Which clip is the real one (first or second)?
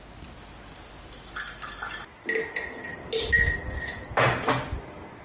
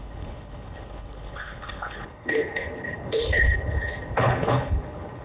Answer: first